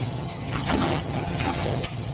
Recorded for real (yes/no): no